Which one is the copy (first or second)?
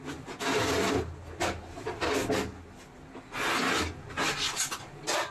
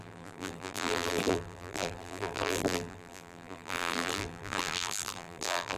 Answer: second